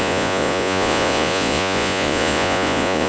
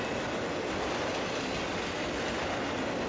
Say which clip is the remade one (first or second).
first